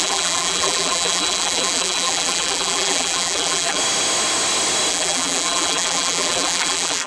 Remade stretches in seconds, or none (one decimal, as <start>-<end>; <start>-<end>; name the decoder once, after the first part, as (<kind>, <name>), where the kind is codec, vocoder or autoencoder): 0.0-3.8 (vocoder, BigVGAN v2); 4.9-7.1